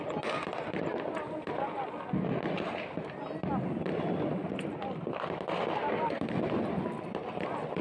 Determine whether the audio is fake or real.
real